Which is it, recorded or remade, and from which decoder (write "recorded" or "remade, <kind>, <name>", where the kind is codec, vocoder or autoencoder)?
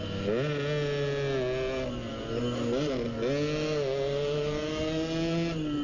recorded